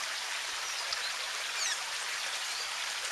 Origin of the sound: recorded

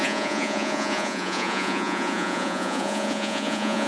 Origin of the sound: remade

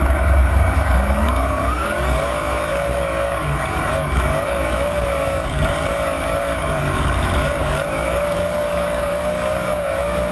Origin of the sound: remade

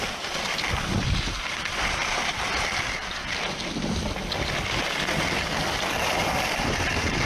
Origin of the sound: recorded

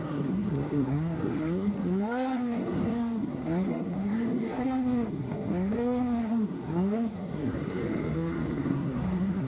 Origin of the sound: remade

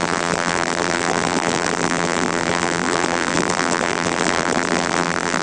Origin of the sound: remade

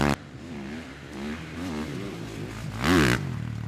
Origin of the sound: recorded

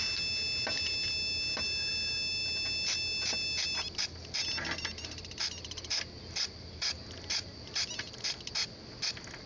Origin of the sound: recorded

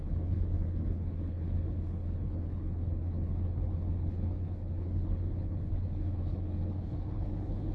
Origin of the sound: remade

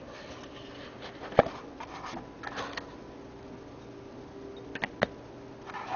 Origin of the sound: recorded